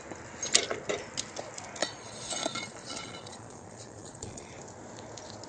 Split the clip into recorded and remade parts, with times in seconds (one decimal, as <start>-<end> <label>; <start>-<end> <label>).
0.0-1.8 recorded; 1.8-4.5 remade; 4.5-5.5 recorded